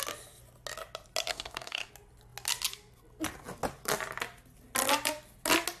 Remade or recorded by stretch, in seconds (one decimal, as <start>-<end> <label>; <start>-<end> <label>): 0.0-1.3 recorded; 1.3-1.9 remade; 1.9-5.8 recorded